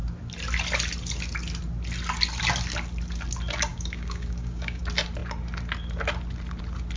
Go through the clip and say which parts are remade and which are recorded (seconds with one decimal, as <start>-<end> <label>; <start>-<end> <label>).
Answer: 0.0-3.7 recorded; 3.7-4.8 remade; 4.8-7.0 recorded